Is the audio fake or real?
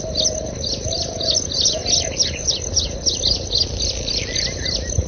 real